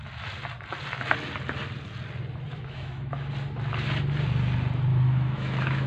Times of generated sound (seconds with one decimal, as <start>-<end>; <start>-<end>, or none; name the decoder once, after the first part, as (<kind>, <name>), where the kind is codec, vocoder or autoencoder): 2.5-3.3 (autoencoder, DAC-VAE); 4.9-5.9